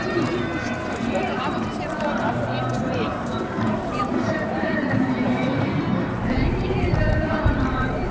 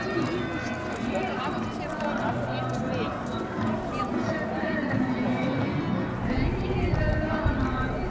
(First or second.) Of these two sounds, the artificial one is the first